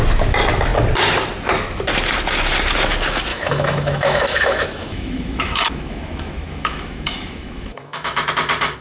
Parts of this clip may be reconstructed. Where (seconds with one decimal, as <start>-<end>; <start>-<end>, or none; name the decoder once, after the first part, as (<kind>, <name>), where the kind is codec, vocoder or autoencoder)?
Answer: 3.3-8.3 (autoencoder, DAC-VAE)